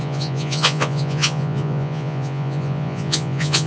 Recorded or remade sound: remade